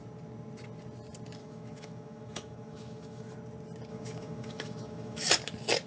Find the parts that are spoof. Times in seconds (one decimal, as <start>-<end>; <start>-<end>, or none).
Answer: 1.4-3.3; 3.9-5.3